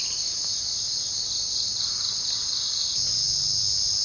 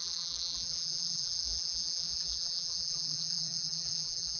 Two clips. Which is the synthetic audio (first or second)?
second